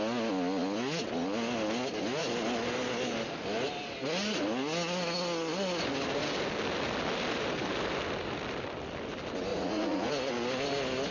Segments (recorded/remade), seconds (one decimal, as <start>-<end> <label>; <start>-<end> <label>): 0.0-9.5 recorded; 9.5-10.1 remade; 10.1-11.1 recorded